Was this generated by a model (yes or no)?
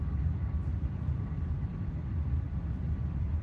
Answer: no